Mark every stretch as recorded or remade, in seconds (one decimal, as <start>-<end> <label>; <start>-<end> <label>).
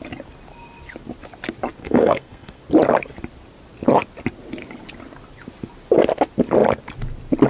0.0-1.8 recorded; 1.8-2.6 remade; 2.6-7.5 recorded